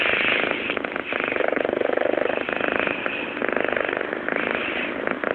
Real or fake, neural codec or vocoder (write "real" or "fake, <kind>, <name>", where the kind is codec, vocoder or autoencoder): real